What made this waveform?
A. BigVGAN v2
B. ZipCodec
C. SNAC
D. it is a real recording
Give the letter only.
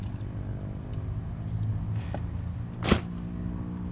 D